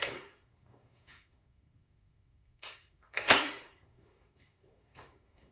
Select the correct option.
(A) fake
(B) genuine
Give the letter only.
A